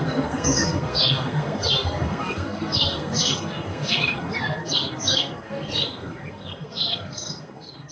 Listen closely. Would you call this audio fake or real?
fake